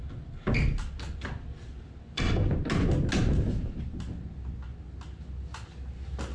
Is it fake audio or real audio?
real